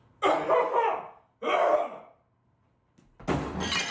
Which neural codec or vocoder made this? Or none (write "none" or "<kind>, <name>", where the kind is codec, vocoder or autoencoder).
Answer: none